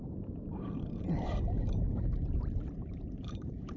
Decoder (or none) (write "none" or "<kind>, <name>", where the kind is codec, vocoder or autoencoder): vocoder, BigVGAN v2